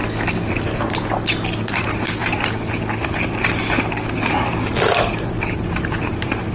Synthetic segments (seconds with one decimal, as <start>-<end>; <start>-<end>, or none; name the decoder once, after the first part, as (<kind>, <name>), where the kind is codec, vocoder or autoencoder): 1.7-2.2 (vocoder, BigVGAN v2); 4.1-6.5